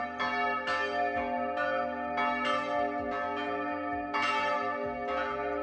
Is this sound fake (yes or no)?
no